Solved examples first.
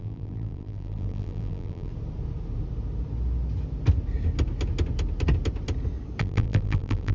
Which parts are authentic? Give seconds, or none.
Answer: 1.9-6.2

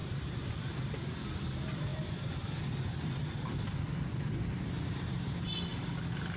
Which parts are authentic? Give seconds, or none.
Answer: 0.0-6.4